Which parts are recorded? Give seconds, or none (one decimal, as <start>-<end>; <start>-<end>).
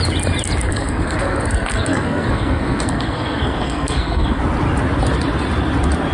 0.0-0.7; 4.4-6.1